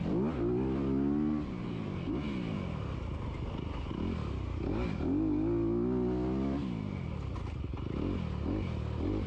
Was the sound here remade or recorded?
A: recorded